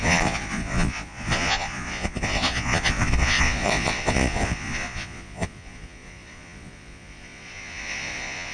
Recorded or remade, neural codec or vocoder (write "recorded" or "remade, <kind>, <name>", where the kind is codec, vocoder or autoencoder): remade, vocoder, Vocos